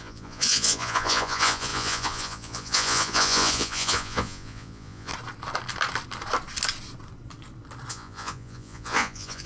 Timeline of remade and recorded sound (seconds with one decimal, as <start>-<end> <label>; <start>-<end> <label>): 0.0-5.1 remade; 5.1-7.9 recorded; 7.9-9.5 remade